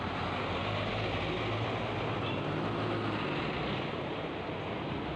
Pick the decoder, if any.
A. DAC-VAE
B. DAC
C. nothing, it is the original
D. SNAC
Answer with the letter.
C